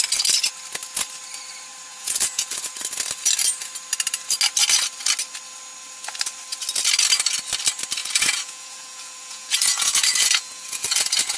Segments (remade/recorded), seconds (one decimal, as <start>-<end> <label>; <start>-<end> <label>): 0.0-1.9 recorded; 1.9-2.7 remade; 2.7-8.0 recorded; 8.0-11.4 remade